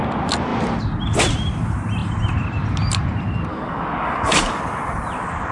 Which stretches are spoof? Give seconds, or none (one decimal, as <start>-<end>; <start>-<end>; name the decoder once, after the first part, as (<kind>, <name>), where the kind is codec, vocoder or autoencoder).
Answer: 3.5-4.6 (codec, DAC)